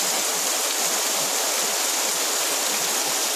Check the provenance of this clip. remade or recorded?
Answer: recorded